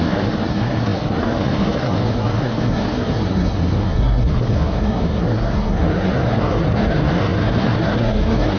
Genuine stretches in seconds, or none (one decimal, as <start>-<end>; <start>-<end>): none